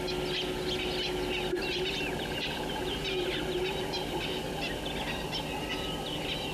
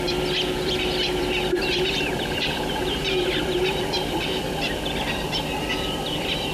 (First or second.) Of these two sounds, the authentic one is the first